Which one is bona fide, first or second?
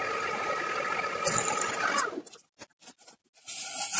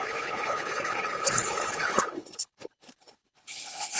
first